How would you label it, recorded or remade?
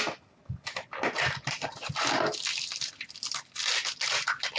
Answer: recorded